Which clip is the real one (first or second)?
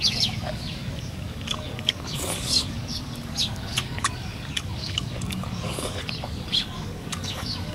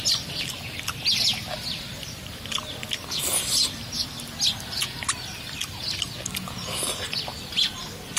second